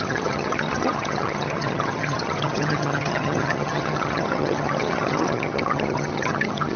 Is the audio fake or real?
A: fake